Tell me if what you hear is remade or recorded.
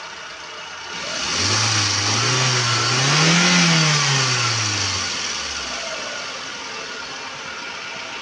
recorded